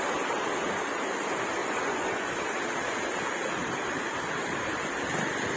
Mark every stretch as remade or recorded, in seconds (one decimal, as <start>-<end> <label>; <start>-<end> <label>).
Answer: 0.0-1.6 recorded; 1.6-2.3 remade; 2.3-5.6 recorded